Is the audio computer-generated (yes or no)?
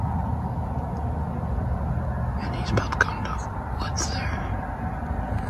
no